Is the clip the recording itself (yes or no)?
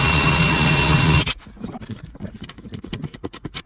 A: no